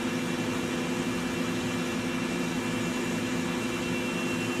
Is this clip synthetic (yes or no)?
no